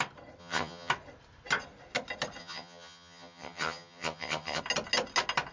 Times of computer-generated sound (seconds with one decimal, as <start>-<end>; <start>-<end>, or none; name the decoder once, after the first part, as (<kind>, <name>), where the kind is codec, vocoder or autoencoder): 0.4-0.9 (vocoder, HiFi-GAN); 2.4-4.6